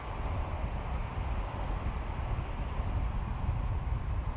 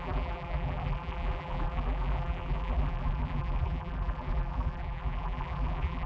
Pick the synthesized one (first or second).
second